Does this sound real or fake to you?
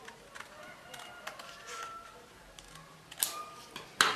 real